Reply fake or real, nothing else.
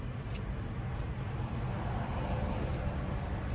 real